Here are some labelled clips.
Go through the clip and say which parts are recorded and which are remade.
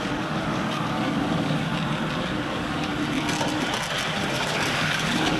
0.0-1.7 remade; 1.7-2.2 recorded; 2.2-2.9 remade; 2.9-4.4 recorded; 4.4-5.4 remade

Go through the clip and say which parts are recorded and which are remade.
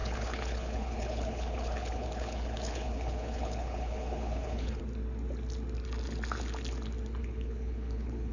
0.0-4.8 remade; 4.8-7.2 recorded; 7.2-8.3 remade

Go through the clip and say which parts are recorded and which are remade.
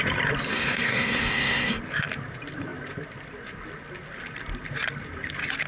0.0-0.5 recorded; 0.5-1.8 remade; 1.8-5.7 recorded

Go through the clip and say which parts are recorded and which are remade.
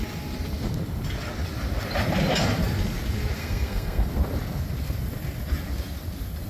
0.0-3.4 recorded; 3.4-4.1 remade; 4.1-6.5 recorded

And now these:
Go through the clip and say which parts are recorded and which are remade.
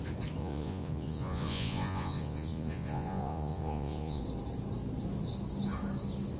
0.0-0.4 recorded; 0.4-4.2 remade; 4.2-6.4 recorded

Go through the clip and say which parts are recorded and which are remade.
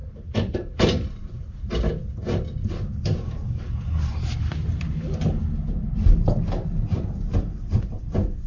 0.0-1.7 remade; 1.7-4.1 recorded; 4.1-5.4 remade; 5.4-8.5 recorded